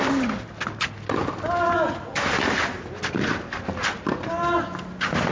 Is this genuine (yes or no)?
yes